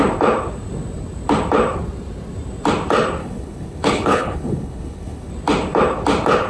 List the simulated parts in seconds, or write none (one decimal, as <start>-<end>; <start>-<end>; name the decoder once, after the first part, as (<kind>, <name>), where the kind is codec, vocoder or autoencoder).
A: 3.2-5.3 (codec, HILCodec)